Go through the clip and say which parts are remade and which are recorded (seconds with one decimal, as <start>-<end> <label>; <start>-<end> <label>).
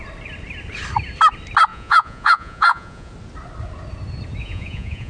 0.0-1.7 recorded; 1.7-3.1 remade; 3.1-4.4 recorded; 4.4-5.1 remade